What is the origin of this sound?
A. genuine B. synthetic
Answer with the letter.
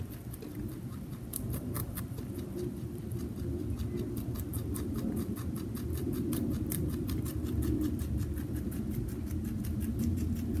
B